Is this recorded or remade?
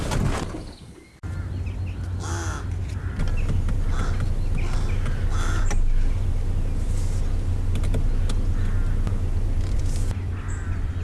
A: recorded